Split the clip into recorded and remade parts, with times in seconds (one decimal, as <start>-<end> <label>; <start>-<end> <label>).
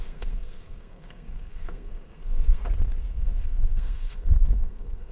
0.0-2.6 remade; 2.6-3.1 recorded; 3.1-5.1 remade